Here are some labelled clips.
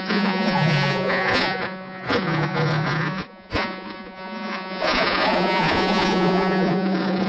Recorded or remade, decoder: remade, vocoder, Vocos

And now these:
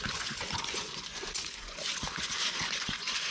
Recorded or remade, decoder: remade, vocoder, Vocos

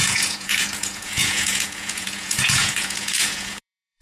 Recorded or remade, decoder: remade, vocoder, Vocos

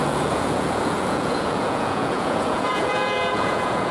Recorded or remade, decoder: remade, vocoder, Vocos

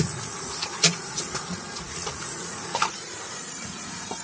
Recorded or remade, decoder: remade, vocoder, Vocos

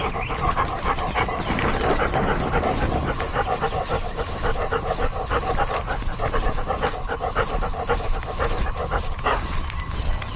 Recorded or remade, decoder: recorded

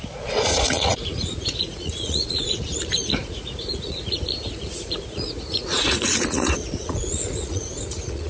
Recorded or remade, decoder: remade, vocoder, Vocos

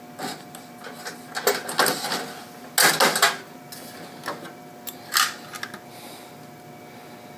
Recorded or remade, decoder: recorded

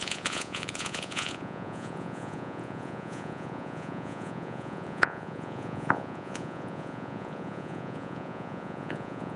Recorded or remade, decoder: remade, vocoder, Vocos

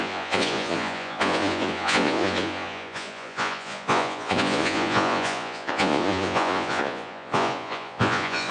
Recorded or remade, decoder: remade, vocoder, Vocos